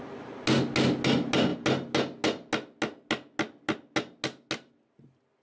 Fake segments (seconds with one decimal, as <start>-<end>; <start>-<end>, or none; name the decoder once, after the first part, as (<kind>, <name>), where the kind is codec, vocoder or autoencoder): none

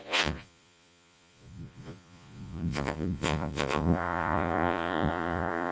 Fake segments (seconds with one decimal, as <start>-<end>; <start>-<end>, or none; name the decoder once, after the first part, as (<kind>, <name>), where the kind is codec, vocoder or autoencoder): 0.0-5.7 (vocoder, Vocos)